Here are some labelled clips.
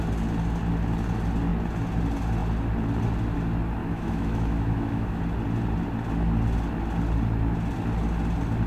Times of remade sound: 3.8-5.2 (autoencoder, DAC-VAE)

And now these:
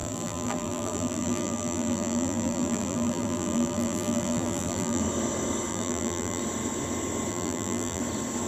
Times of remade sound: 0.0-5.0 (vocoder, BigVGAN v2); 5.7-6.4; 7.3-8.0

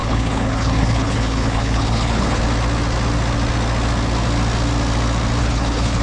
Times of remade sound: 0.0-2.4 (codec, HILCodec); 5.4-6.0

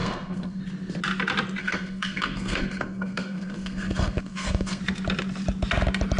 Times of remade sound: 0.0-0.6 (codec, SNAC); 1.6-4.8

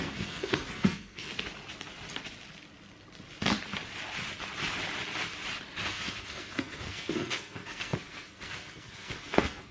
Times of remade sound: 0.0-1.3 (codec, SNAC); 5.9-9.7

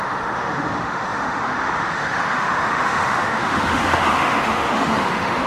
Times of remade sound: 0.0-5.5 (autoencoder, DAC-VAE)